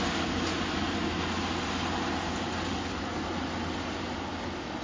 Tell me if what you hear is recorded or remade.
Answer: recorded